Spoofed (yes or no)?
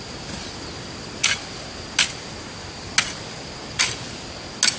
no